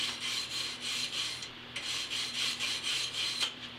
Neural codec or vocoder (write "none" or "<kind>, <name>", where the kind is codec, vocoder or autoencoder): vocoder, BigVGAN v2